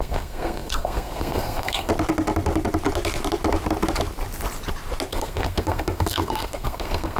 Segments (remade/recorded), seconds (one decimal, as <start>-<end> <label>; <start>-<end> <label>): 0.0-1.9 remade; 1.9-5.1 recorded; 5.1-7.2 remade